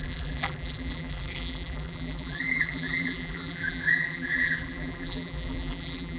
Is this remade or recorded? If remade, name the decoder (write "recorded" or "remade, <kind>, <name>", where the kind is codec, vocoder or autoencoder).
remade, vocoder, BigVGAN v2